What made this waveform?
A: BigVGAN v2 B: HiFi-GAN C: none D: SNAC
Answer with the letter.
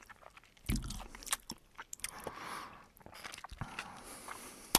C